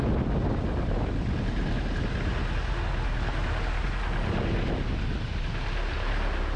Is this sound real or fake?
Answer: real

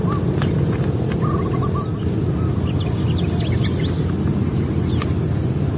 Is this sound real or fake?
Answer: real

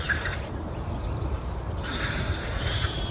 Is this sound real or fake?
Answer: fake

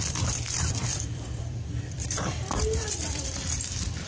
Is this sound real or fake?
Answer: fake